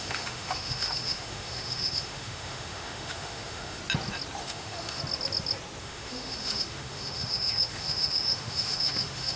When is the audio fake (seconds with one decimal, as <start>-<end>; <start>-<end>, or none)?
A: 0.0-3.8; 4.4-5.0; 5.8-9.4